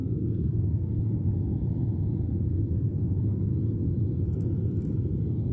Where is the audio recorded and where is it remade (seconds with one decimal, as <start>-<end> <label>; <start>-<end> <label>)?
0.0-1.3 remade; 1.3-2.5 recorded; 2.5-3.5 remade; 3.5-5.5 recorded